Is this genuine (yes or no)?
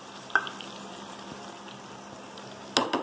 yes